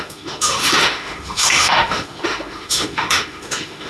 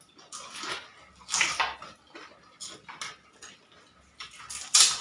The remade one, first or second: first